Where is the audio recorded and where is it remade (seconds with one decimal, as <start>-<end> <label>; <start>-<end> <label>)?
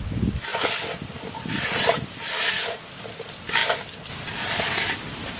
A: 0.0-5.4 recorded